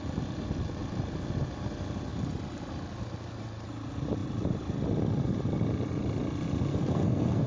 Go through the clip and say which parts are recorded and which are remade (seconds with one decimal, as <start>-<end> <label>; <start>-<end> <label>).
0.0-6.7 recorded; 6.7-7.5 remade